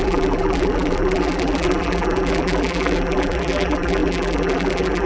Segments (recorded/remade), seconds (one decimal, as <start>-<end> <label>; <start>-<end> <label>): 0.0-5.1 remade